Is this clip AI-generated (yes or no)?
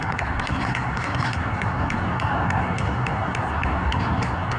yes